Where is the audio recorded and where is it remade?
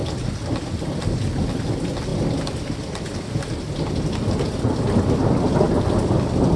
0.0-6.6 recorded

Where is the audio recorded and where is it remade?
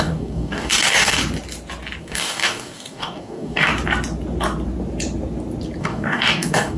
0.0-1.2 remade; 1.2-2.0 recorded; 2.0-3.7 remade; 3.7-5.8 recorded; 5.8-6.8 remade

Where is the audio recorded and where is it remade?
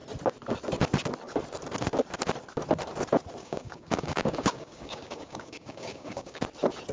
0.0-3.4 recorded; 3.4-6.4 remade; 6.4-6.9 recorded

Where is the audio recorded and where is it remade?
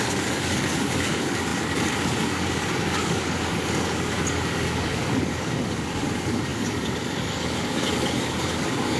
0.0-9.0 remade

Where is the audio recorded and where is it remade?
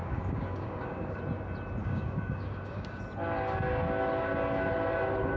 0.0-1.2 remade; 1.2-1.8 recorded; 1.8-3.0 remade; 3.0-5.4 recorded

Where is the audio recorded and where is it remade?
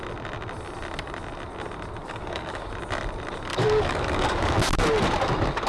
0.0-2.0 recorded; 2.0-2.7 remade; 2.7-3.5 recorded; 3.5-4.8 remade; 4.8-5.7 recorded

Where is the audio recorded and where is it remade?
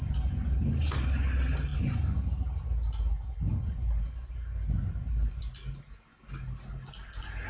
0.0-7.5 recorded